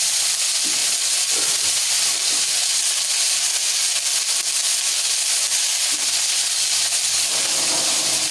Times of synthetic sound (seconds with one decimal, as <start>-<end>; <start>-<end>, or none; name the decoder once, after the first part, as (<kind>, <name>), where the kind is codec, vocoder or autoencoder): 0.8-2.8 (vocoder, BigVGAN v2)

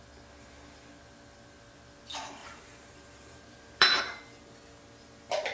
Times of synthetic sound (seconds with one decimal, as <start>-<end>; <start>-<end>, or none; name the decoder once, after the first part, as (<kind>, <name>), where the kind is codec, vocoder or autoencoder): 2.4-4.0 (vocoder, BigVGAN v2)